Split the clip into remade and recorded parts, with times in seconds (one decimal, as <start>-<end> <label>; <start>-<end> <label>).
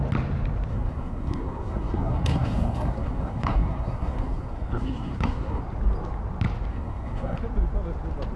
0.0-0.7 recorded; 0.7-5.6 remade; 5.6-6.7 recorded; 6.7-7.4 remade; 7.4-8.4 recorded